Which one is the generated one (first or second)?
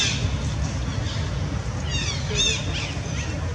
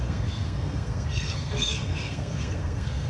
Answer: second